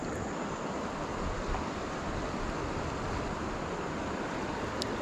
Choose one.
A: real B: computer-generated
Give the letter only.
A